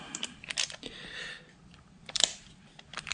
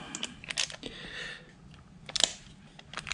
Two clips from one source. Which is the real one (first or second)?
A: second